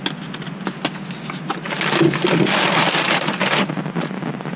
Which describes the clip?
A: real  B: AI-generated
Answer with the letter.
A